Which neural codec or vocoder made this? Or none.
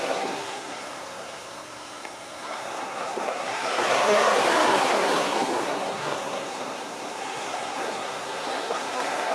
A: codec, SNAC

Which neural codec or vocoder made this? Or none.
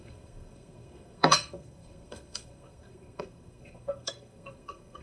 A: codec, SNAC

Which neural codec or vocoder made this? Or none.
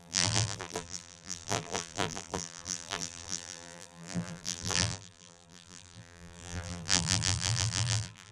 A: vocoder, BigVGAN v2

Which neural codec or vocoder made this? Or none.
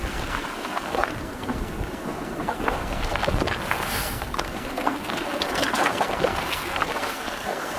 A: codec, SNAC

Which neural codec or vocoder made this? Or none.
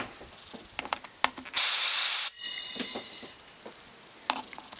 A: none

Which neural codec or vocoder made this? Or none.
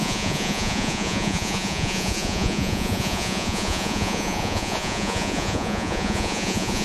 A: vocoder, Vocos